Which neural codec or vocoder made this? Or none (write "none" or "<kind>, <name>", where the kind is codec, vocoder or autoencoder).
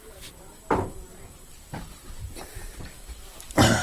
vocoder, BigVGAN v2